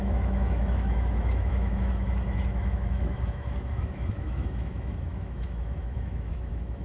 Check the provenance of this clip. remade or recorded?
remade